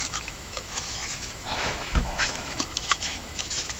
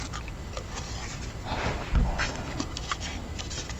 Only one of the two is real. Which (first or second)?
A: second